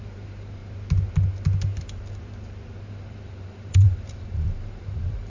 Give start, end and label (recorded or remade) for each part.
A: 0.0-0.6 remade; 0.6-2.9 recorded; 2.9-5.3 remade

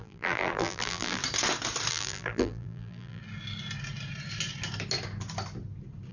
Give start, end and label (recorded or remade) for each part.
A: 0.0-1.2 remade; 1.2-1.9 recorded; 1.9-3.2 remade; 3.2-6.1 recorded

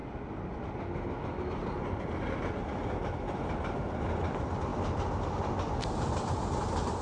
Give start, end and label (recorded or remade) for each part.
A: 0.0-2.4 recorded; 2.4-7.0 remade

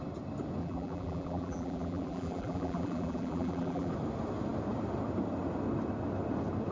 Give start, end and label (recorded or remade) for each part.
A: 0.0-0.6 recorded; 0.6-3.9 remade; 3.9-6.7 recorded

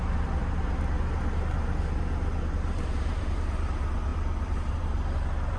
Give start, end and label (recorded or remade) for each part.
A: 0.0-0.4 remade; 0.4-2.8 recorded; 2.8-5.6 remade

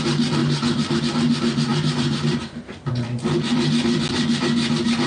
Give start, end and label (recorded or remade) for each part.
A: 0.0-0.4 recorded; 0.4-1.0 remade; 1.0-1.7 recorded; 1.7-2.9 remade; 2.9-5.1 recorded